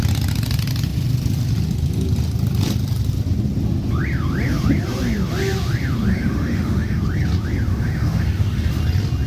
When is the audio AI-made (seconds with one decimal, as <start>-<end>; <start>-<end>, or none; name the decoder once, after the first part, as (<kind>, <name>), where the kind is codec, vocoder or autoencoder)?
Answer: 6.1-7.0 (autoencoder, DAC-VAE); 7.7-8.8